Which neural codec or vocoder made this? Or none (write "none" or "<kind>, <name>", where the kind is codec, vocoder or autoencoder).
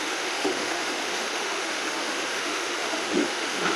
autoencoder, DAC-VAE